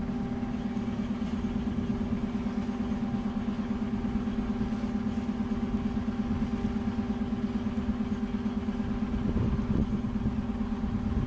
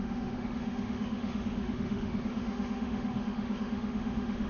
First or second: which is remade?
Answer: second